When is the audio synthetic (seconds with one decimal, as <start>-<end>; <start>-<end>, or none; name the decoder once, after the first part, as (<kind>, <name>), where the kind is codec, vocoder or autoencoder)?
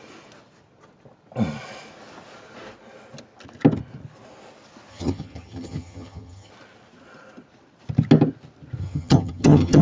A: 4.9-6.5 (vocoder, HiFi-GAN); 8.8-9.8